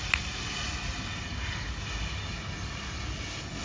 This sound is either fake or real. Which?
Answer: real